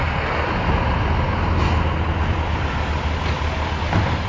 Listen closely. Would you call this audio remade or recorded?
recorded